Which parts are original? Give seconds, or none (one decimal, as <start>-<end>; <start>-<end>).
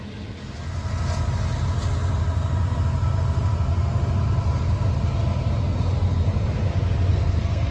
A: 0.0-7.1